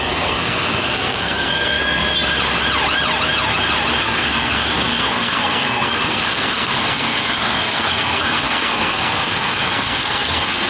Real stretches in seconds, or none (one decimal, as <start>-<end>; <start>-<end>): 2.0-4.0